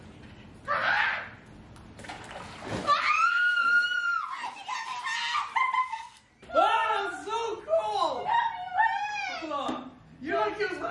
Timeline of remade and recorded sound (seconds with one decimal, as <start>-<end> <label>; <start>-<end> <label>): 0.0-5.8 recorded; 5.8-6.3 remade; 6.3-10.9 recorded